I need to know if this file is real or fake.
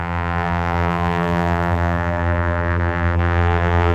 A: fake